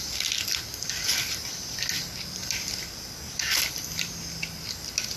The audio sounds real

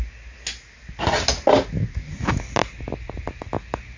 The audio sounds real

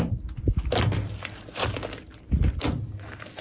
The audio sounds real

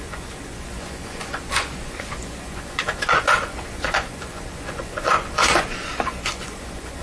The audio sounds fake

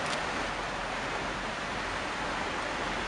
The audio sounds real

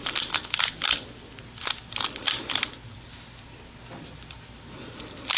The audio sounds real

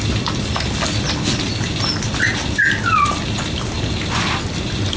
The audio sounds real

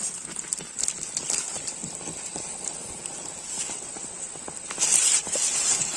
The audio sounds real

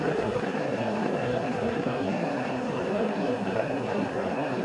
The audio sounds fake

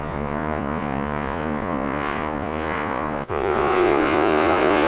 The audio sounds fake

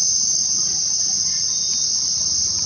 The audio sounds real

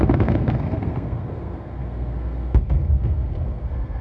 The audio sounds fake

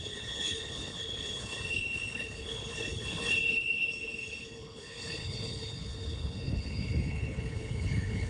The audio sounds fake